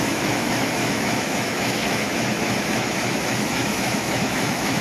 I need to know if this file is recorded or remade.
remade